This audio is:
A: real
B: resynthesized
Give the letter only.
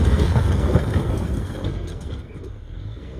B